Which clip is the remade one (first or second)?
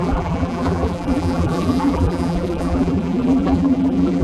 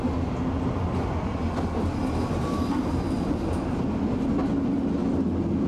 first